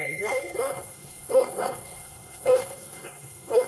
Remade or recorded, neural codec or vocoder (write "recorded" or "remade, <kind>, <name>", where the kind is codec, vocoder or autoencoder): remade, codec, SNAC